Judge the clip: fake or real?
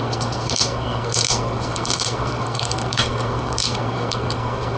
fake